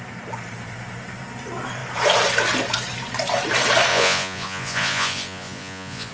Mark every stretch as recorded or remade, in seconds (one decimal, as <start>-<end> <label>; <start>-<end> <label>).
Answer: 0.0-3.9 recorded; 3.9-6.1 remade